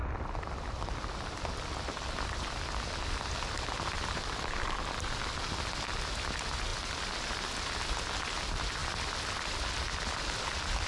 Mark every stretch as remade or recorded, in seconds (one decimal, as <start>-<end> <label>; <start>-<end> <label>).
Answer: 0.0-10.9 recorded